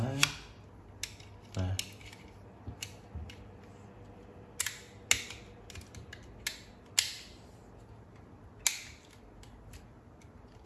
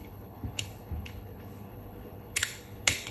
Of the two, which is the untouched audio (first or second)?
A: first